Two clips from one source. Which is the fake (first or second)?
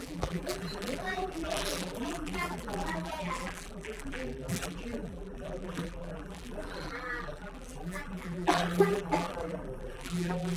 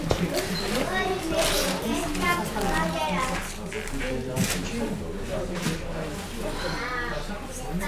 first